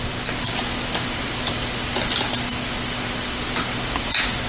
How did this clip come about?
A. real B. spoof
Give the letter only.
A